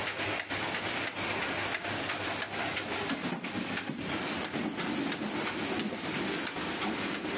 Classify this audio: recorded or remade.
recorded